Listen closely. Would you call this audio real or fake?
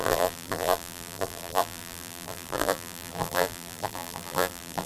fake